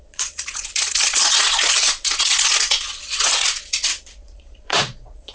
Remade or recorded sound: remade